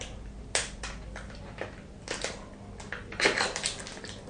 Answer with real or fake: real